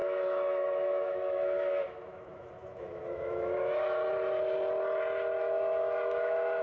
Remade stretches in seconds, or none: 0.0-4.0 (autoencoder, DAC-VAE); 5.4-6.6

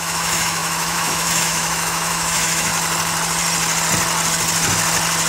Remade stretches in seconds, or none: 0.0-2.7 (autoencoder, DAC-VAE)

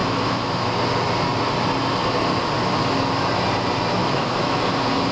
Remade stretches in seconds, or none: 0.0-0.7 (autoencoder, DAC-VAE); 4.0-4.6

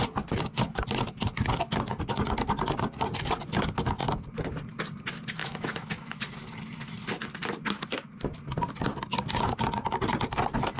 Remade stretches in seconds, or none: 5.4-6.3 (autoencoder, DAC-VAE)

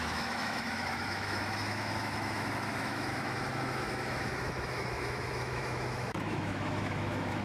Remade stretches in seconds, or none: 0.0-7.4 (autoencoder, DAC-VAE)

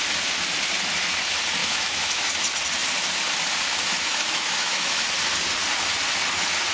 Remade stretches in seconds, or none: 1.6-2.3 (autoencoder, DAC-VAE); 3.9-5.1